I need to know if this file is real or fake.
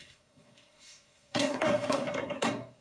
fake